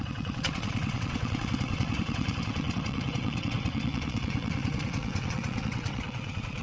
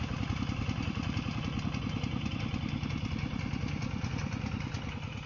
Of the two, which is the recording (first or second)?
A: second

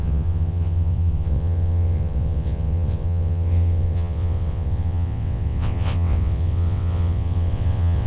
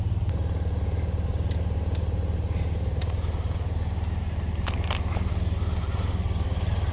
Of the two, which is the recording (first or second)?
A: second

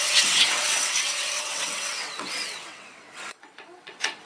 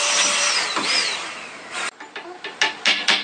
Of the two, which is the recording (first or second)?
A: second